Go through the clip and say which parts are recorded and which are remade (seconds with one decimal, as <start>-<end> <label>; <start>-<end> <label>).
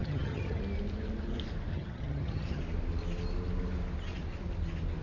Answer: 0.0-0.6 remade; 0.6-1.7 recorded; 1.7-2.6 remade; 2.6-5.0 recorded